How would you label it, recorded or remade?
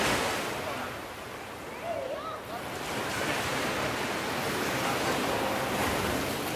recorded